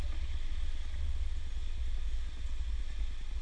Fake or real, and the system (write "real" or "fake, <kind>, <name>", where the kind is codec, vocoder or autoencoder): real